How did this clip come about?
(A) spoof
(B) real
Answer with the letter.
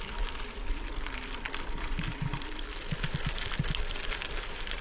B